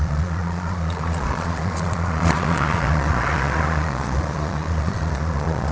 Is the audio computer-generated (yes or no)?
yes